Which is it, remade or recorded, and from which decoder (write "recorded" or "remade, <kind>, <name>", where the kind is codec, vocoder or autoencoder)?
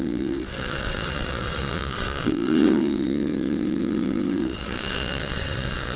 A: remade, vocoder, WaveNeXt